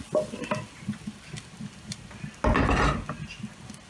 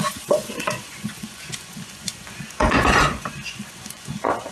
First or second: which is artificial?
second